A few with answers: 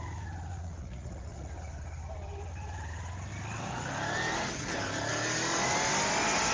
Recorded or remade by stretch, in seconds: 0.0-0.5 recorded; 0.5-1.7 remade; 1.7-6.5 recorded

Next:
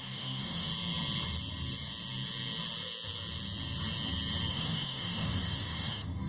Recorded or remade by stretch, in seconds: 0.0-0.7 remade; 0.7-4.5 recorded; 4.5-6.3 remade

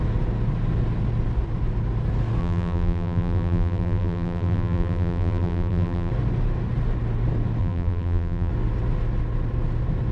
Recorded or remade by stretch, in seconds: 0.0-2.4 recorded; 2.4-6.1 remade; 6.1-7.6 recorded; 7.6-8.5 remade; 8.5-10.1 recorded

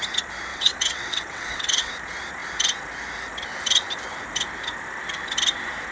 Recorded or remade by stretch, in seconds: 0.0-0.5 recorded; 0.5-1.9 remade; 1.9-5.9 recorded

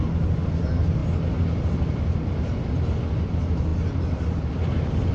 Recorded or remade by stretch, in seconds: 0.0-5.1 recorded

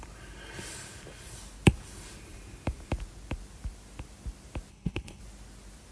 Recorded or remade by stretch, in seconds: 0.0-4.7 recorded; 4.7-5.2 remade; 5.2-5.9 recorded